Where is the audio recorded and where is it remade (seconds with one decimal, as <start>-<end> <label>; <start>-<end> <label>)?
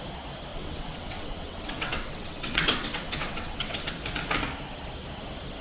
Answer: 0.0-0.5 recorded; 0.5-3.9 remade; 3.9-5.6 recorded